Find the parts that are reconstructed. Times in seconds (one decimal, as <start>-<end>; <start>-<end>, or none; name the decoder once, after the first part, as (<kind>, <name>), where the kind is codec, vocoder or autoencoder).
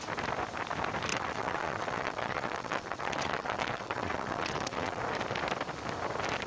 1.1-5.0 (vocoder, WaveNeXt)